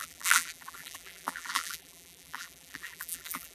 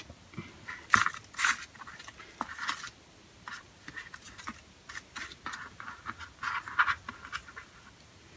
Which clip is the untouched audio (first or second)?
second